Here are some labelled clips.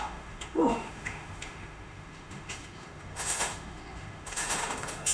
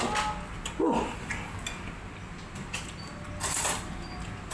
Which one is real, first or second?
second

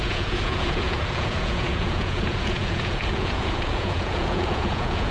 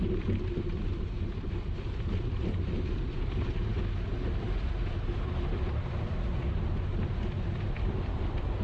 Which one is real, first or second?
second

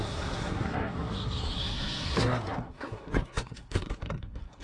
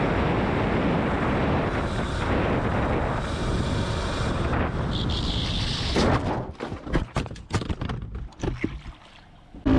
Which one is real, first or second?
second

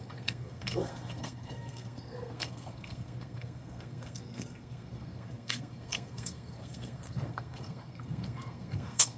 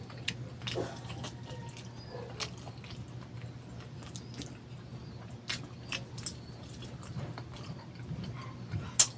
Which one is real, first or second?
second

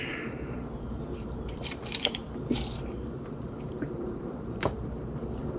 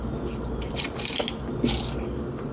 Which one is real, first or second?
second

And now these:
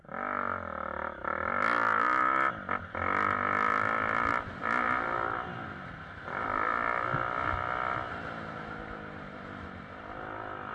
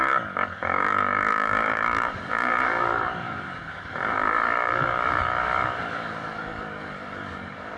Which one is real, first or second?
first